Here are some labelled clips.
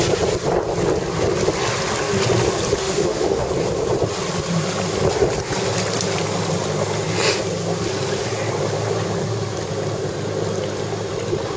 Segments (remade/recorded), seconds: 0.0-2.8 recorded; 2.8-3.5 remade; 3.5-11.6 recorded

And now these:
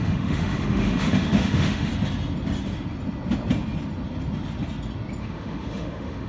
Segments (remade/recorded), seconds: 0.0-1.9 remade; 1.9-5.2 recorded; 5.2-6.3 remade

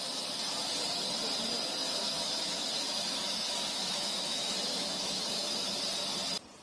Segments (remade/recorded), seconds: 0.0-1.8 recorded; 1.8-5.8 remade; 5.8-6.6 recorded

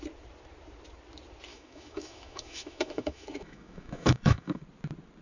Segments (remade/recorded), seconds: 0.0-1.5 recorded; 1.5-4.6 remade; 4.6-5.2 recorded